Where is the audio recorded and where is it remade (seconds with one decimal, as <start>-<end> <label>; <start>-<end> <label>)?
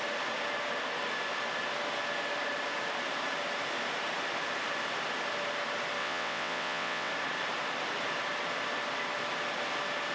0.0-6.0 recorded; 6.0-7.1 remade; 7.1-10.1 recorded